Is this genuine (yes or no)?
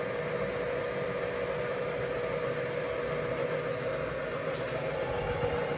yes